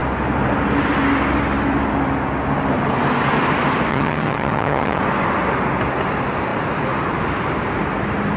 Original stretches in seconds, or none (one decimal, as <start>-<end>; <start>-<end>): 0.0-3.9; 5.0-8.4